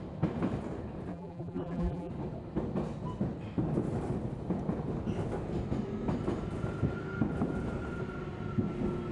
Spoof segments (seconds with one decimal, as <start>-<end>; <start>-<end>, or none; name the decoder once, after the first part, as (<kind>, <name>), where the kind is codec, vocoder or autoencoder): 1.1-2.1 (vocoder, BigVGAN v2)